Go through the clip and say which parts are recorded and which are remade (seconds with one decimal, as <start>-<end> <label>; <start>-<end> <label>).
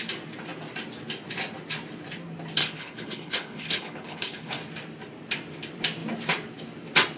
0.0-2.6 recorded; 2.6-4.6 remade; 4.6-7.2 recorded